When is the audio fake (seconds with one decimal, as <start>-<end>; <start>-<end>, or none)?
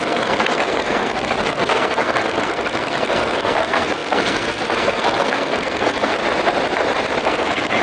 0.0-6.2; 7.2-7.8